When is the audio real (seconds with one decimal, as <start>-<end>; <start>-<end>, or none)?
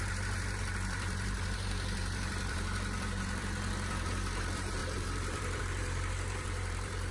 none